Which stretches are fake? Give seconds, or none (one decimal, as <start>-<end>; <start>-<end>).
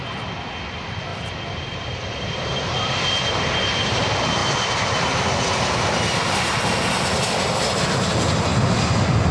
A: 1.1-2.4; 4.4-4.9